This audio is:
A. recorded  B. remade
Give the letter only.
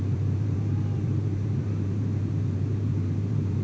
B